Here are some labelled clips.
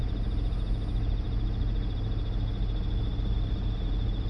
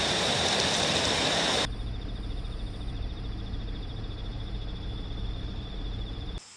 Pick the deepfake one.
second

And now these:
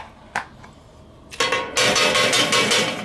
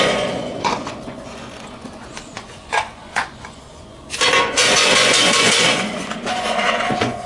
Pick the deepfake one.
second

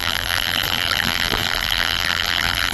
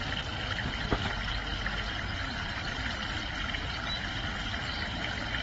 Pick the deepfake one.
first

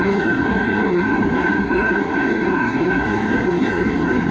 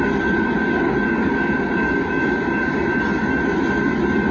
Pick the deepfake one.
first